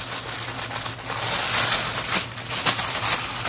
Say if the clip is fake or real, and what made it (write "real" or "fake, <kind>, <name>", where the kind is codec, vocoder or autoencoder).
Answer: real